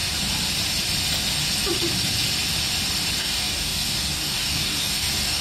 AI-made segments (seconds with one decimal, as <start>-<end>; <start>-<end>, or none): 3.2-5.4